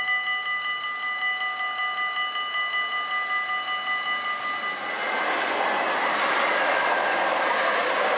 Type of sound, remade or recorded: recorded